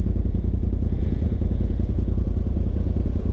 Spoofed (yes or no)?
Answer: yes